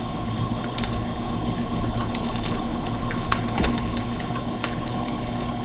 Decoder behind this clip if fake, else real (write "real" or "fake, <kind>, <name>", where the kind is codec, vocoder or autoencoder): fake, codec, HILCodec